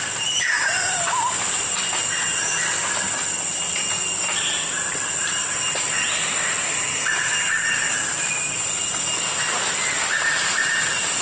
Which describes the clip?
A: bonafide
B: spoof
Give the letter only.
B